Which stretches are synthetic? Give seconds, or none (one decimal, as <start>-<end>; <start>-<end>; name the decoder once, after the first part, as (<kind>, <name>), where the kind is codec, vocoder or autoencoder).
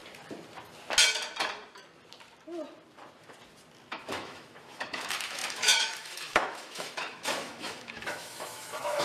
3.9-9.0 (autoencoder, DAC-VAE)